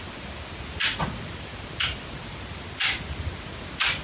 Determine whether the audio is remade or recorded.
recorded